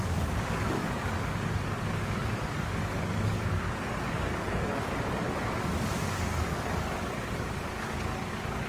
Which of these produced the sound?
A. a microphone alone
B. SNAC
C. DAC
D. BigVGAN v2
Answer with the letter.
C